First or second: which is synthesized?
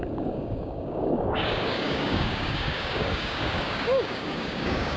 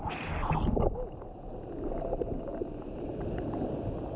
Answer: first